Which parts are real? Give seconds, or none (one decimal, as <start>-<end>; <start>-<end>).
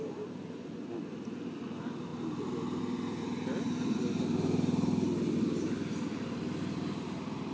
0.0-7.5